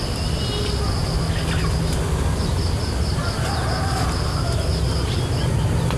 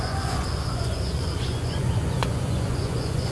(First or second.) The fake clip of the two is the second